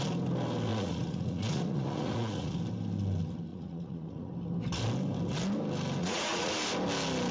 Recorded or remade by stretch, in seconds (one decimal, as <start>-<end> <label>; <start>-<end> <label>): 0.0-0.7 recorded; 0.7-2.6 remade; 2.6-3.5 recorded; 3.5-4.3 remade; 4.3-6.0 recorded; 6.0-6.5 remade; 6.5-7.3 recorded